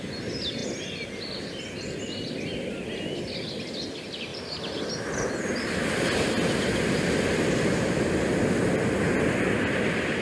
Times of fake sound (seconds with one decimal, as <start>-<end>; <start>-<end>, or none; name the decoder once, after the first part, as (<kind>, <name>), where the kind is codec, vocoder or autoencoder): 4.3-5.5 (vocoder, BigVGAN v2)